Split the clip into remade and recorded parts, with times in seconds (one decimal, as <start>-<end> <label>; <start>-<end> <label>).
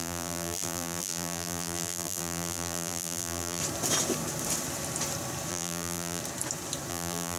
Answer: 0.0-3.6 remade; 3.6-5.5 recorded; 5.5-6.2 remade; 6.2-6.9 recorded; 6.9-7.4 remade